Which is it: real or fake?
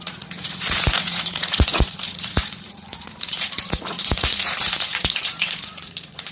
fake